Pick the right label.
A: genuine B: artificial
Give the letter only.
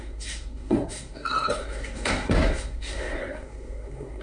B